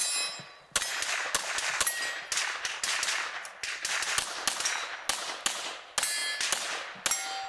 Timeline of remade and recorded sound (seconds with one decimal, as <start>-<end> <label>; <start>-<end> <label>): 0.0-7.5 recorded